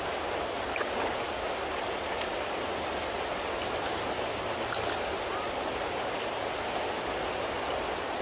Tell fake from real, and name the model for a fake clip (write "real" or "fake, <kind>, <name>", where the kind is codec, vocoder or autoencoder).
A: real